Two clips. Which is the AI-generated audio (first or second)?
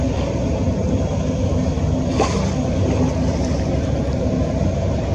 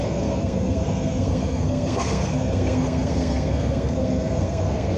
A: second